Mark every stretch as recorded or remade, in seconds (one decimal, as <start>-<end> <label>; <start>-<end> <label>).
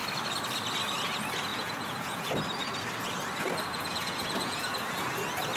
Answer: 0.0-1.5 recorded; 1.5-2.3 remade; 2.3-3.7 recorded; 3.7-4.7 remade; 4.7-5.6 recorded